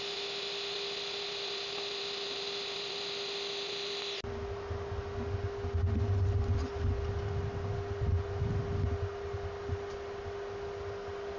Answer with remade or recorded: recorded